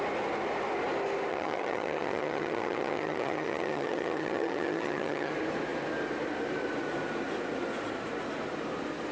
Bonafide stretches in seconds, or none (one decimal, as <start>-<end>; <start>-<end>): 0.0-1.3; 5.3-9.1